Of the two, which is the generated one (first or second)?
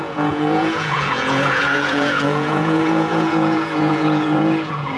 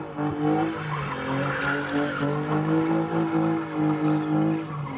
first